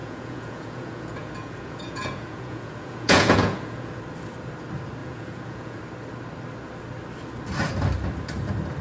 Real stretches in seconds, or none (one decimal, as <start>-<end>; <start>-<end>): 4.0-5.0; 5.8-8.8